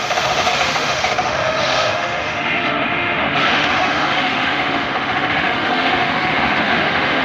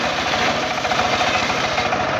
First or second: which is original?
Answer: second